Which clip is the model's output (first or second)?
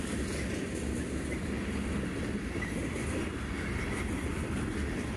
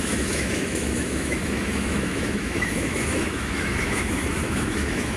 second